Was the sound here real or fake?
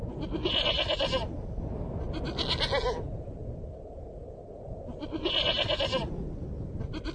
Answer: real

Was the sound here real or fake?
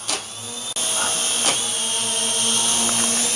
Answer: real